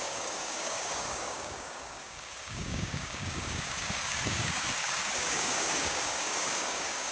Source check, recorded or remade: remade